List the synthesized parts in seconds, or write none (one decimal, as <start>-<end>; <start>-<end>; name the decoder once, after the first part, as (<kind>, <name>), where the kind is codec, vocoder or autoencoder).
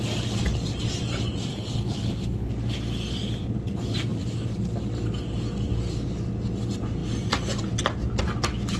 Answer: 1.5-2.5 (codec, HILCodec)